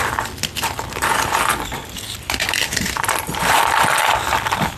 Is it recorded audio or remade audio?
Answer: remade